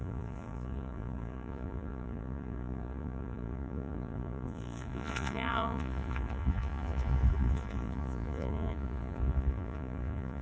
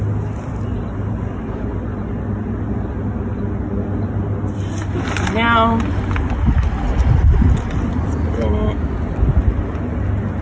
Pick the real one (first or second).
second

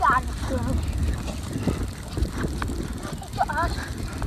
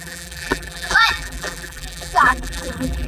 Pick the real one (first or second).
first